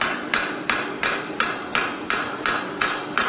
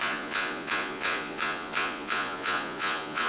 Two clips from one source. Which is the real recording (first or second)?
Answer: first